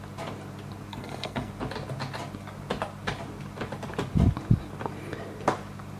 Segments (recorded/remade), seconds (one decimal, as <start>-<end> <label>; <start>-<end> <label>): 0.0-0.9 recorded; 0.9-1.5 remade; 1.5-6.0 recorded